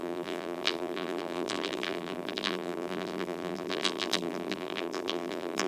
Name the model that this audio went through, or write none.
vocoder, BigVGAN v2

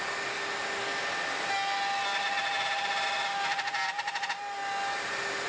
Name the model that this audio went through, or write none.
none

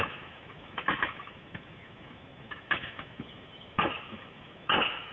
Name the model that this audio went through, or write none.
autoencoder, DAC-VAE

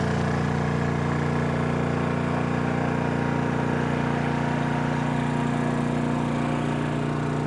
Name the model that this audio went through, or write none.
none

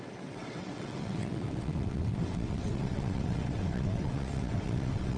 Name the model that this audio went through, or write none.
vocoder, WaveNeXt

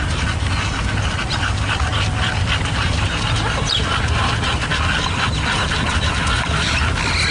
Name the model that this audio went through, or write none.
none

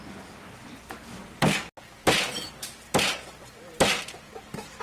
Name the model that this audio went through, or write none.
none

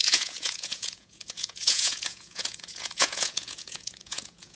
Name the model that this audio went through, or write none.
vocoder, Vocos